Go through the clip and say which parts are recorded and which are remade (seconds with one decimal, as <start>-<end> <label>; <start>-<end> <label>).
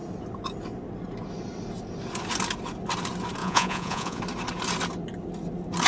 0.0-3.4 recorded; 3.4-4.2 remade; 4.2-5.9 recorded